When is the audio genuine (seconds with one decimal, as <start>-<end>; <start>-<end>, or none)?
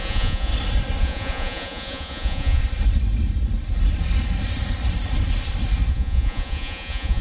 0.5-1.0; 2.6-5.9